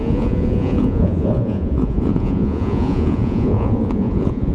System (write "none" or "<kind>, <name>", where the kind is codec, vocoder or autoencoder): vocoder, Vocos